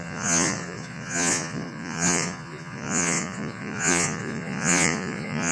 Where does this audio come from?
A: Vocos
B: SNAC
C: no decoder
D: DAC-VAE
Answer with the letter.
A